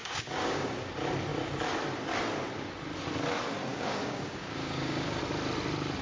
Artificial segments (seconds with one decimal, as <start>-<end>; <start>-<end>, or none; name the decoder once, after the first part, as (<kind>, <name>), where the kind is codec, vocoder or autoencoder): 0.0-0.9 (codec, DAC); 3.7-5.2